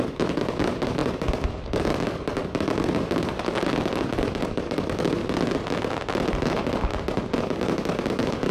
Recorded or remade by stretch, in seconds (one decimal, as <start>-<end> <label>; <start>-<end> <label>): 0.0-5.2 remade; 5.2-6.3 recorded; 6.3-6.9 remade; 6.9-7.4 recorded; 7.4-8.5 remade